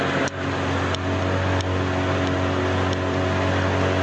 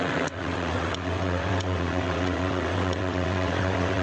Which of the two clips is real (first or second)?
first